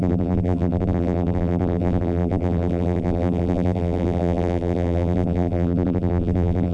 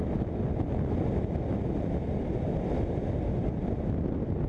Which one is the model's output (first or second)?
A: first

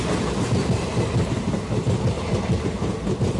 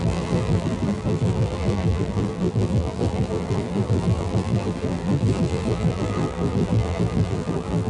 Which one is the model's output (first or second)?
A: second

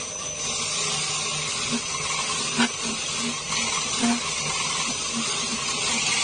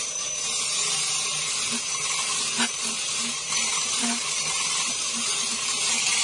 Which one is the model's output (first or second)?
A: second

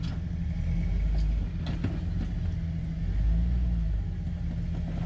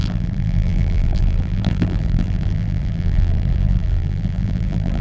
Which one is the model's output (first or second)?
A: second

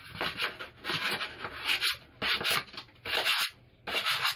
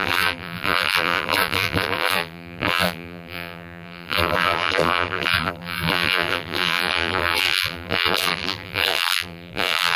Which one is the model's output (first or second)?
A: second